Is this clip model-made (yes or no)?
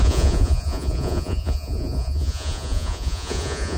yes